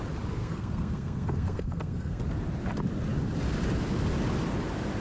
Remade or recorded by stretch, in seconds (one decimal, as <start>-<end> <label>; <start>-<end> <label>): 0.0-0.4 recorded; 0.4-2.2 remade; 2.2-5.0 recorded